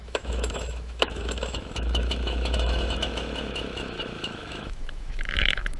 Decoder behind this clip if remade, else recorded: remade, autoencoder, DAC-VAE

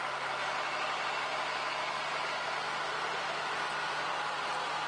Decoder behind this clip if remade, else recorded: recorded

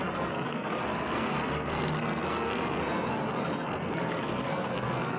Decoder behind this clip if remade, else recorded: remade, codec, SNAC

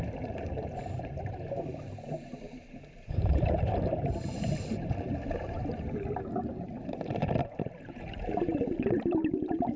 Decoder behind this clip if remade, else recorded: remade, vocoder, BigVGAN v2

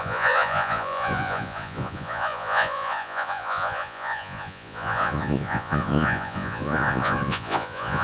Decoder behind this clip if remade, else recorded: remade, vocoder, Vocos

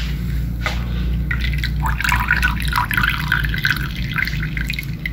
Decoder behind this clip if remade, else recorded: recorded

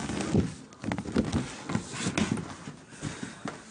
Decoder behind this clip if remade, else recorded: recorded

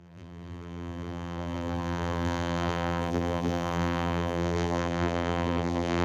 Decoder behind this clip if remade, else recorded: remade, vocoder, BigVGAN v2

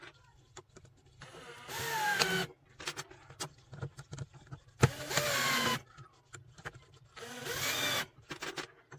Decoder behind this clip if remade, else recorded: recorded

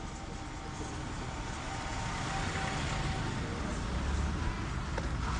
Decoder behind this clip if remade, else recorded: recorded